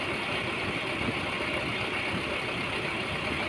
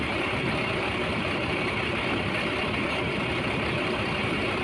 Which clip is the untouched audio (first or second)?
first